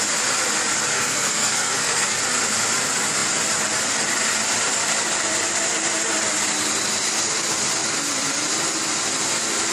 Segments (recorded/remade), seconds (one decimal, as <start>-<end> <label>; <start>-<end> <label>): 0.0-0.9 recorded; 0.9-2.2 remade; 2.2-9.7 recorded

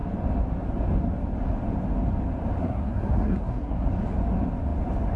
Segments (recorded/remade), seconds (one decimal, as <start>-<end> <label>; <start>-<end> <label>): 0.0-2.6 recorded; 2.6-3.9 remade; 3.9-5.2 recorded

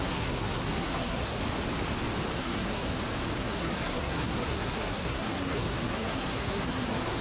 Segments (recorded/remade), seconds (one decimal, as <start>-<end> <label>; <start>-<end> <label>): 0.0-1.4 remade; 1.4-2.4 recorded; 2.4-2.9 remade; 2.9-3.4 recorded; 3.4-7.2 remade

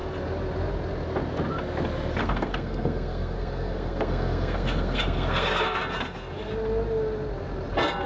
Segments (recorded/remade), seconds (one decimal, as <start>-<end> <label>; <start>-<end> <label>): 0.0-2.2 recorded; 2.2-5.8 remade; 5.8-8.1 recorded

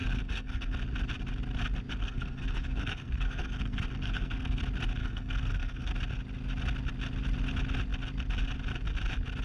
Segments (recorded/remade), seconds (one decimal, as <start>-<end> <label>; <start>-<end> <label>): 0.0-0.8 remade; 0.8-2.0 recorded; 2.0-4.6 remade; 4.6-5.0 recorded; 5.0-5.9 remade; 5.9-9.4 recorded

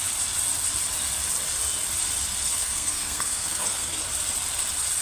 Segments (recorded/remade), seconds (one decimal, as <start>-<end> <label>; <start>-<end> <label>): 0.0-2.5 recorded; 2.5-4.0 remade; 4.0-5.0 recorded

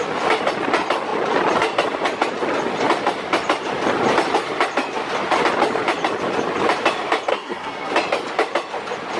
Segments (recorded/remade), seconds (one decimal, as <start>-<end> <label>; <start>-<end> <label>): 0.0-7.3 recorded; 7.3-7.9 remade; 7.9-9.2 recorded